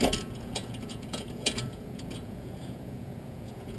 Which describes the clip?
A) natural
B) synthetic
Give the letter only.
B